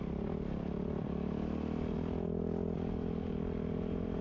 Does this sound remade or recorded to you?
recorded